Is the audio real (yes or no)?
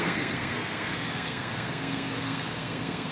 no